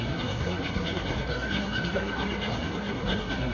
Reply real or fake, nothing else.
fake